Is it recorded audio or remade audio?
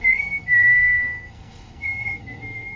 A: remade